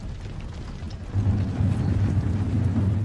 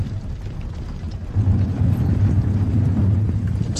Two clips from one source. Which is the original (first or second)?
first